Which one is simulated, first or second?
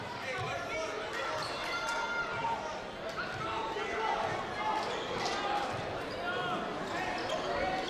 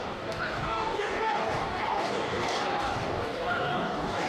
second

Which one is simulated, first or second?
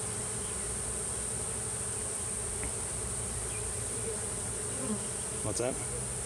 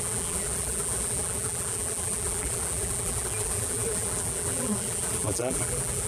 second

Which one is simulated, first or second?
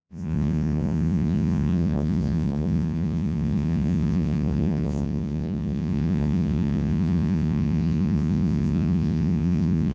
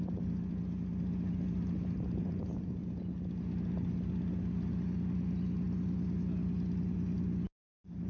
first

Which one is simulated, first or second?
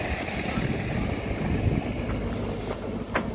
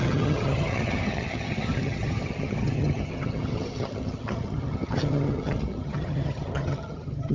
second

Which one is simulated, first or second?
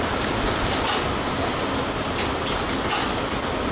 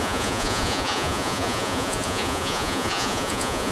second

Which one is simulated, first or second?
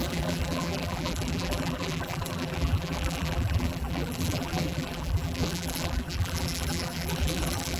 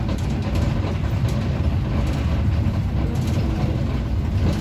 first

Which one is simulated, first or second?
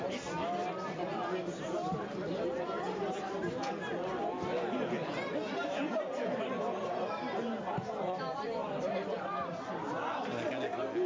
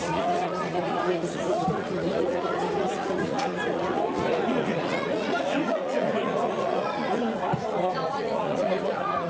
second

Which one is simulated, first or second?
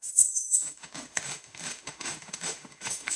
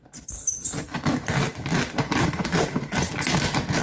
first